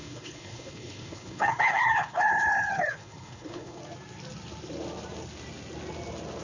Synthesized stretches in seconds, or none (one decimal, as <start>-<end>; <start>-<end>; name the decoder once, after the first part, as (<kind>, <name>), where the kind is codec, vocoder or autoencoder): 0.0-3.8 (codec, HILCodec)